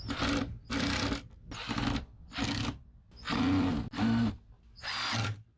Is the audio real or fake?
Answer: real